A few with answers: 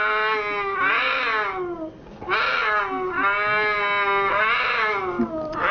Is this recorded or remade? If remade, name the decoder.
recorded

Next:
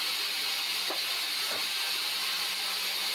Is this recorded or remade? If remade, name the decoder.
recorded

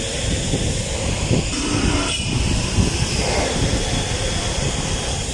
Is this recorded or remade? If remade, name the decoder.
remade, vocoder, BigVGAN v2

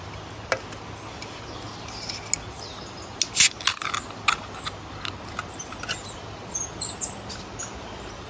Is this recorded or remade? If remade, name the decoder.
recorded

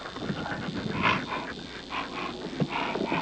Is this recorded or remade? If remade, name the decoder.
recorded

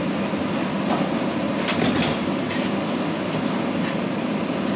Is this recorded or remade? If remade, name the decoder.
recorded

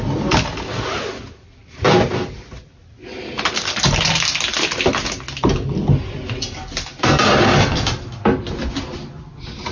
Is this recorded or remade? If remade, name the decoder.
recorded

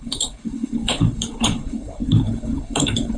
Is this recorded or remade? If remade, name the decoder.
remade, codec, HILCodec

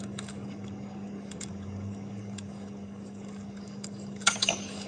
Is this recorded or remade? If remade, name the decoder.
remade, codec, DAC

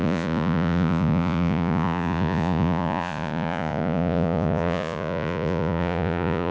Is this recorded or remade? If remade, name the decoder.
remade, vocoder, Vocos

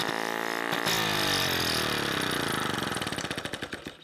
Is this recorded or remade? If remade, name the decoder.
recorded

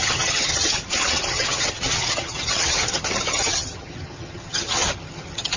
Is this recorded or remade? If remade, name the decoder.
remade, vocoder, HiFi-GAN